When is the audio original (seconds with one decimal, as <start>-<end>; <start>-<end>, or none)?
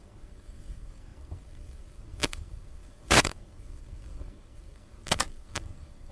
none